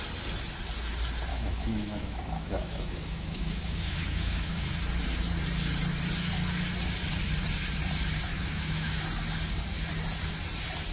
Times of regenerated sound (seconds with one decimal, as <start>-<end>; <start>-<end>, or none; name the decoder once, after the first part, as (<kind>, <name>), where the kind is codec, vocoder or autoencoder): 1.3-4.7 (autoencoder, DAC-VAE); 8.3-9.0